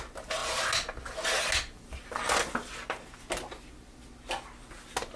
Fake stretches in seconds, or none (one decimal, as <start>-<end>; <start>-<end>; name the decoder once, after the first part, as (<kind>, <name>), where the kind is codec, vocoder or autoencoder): none